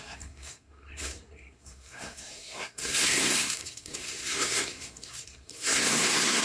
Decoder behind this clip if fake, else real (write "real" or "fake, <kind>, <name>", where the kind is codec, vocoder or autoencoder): fake, codec, SNAC